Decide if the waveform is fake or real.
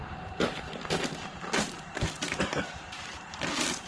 real